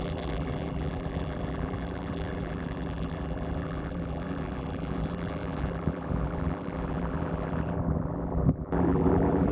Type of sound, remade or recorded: remade